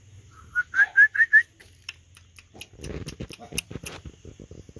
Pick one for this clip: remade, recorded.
recorded